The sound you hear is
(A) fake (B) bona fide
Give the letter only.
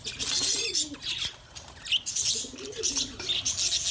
B